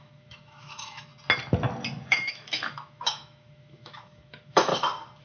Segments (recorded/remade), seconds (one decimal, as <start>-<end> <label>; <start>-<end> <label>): 0.0-1.1 remade; 1.1-2.1 recorded; 2.1-4.7 remade; 4.7-5.2 recorded